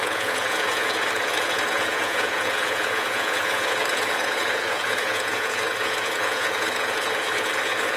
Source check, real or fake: fake